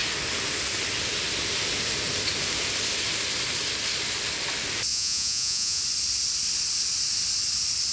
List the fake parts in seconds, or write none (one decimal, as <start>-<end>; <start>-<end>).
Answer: 4.9-5.8